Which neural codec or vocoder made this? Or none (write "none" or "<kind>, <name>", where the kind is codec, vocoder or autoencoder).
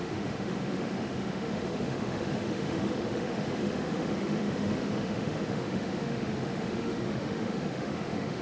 autoencoder, DAC-VAE